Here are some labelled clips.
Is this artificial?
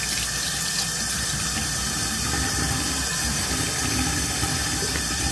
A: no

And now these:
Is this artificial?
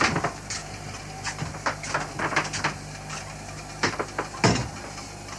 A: no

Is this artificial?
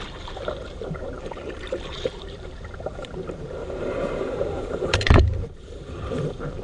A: yes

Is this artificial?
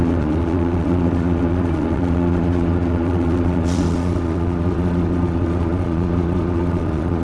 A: yes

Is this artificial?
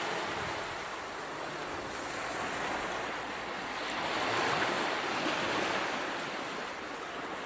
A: no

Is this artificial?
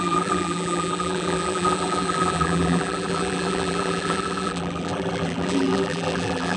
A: yes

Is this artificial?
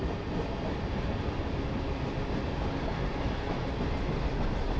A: no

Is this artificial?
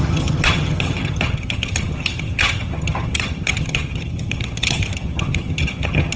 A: yes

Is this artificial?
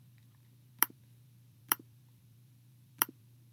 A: yes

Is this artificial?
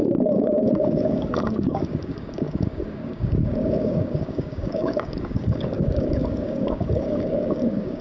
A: yes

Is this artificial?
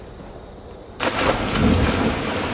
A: no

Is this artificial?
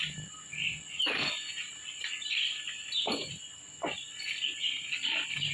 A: no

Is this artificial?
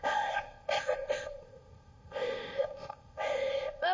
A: yes